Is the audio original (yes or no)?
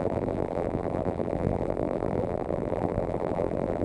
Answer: no